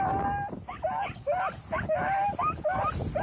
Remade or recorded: recorded